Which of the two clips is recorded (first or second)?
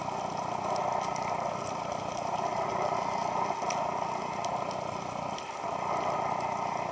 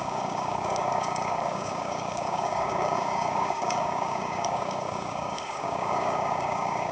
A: first